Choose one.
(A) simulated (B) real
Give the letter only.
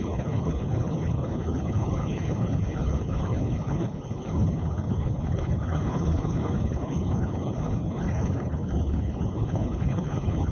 A